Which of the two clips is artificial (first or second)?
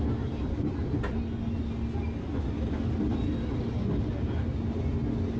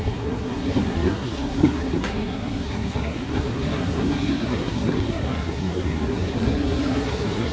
second